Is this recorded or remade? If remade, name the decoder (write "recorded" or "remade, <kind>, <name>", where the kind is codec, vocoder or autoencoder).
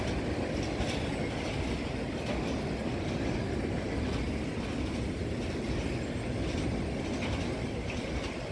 recorded